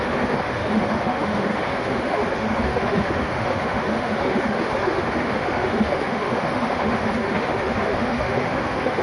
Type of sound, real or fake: fake